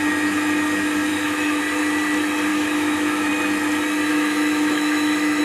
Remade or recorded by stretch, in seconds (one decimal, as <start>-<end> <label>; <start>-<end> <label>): 0.0-1.1 recorded; 1.1-1.6 remade; 1.6-2.5 recorded; 2.5-3.3 remade; 3.3-4.1 recorded; 4.1-5.4 remade